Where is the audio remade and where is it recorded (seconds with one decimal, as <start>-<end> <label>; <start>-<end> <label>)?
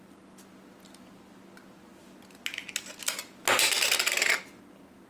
0.0-5.1 recorded